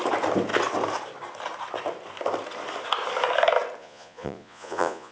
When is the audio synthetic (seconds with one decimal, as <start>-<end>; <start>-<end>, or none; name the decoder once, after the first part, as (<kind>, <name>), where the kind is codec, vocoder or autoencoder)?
3.8-5.1 (vocoder, Vocos)